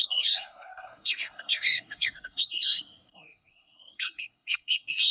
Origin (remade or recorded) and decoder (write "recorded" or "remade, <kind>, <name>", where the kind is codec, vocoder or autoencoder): remade, codec, SNAC